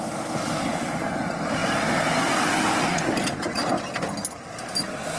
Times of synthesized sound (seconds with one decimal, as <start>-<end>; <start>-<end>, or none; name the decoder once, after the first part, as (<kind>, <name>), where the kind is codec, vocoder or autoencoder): none